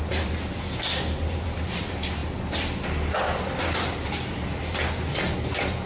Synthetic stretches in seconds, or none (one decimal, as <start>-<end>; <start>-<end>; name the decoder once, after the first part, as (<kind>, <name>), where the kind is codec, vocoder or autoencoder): none